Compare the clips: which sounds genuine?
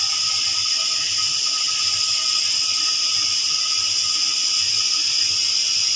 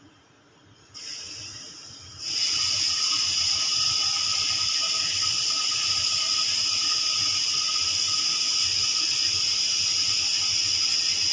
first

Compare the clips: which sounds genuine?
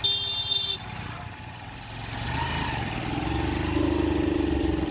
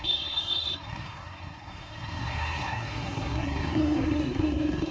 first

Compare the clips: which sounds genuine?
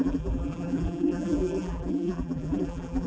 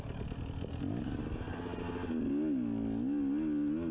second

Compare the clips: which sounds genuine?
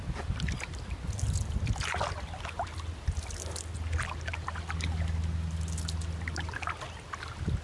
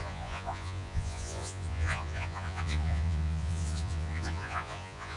first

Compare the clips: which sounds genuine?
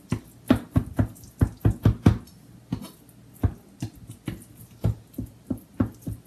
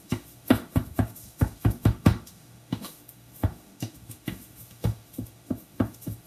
first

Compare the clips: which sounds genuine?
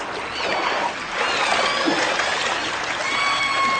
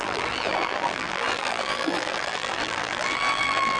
first